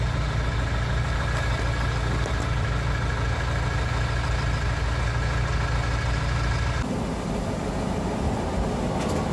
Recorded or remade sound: recorded